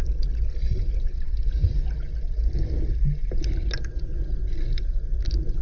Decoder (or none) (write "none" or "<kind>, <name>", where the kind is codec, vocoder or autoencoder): none